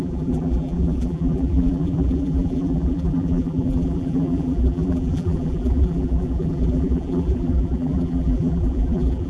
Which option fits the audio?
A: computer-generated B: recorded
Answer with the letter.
A